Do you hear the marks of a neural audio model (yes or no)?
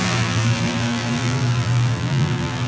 yes